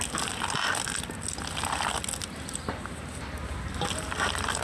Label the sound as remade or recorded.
recorded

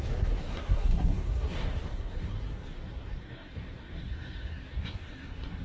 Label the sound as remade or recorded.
remade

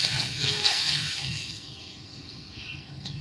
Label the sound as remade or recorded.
remade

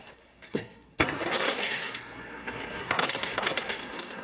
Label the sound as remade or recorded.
remade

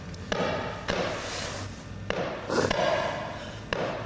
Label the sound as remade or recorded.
recorded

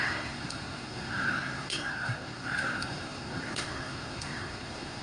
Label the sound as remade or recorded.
remade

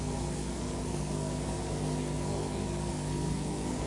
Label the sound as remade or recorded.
remade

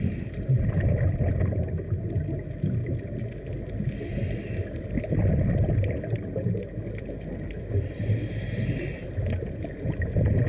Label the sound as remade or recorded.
recorded